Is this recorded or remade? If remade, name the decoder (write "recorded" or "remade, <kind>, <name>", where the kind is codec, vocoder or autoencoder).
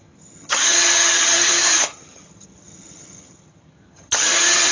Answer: remade, vocoder, HiFi-GAN